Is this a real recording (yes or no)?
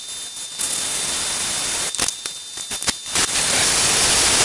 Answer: yes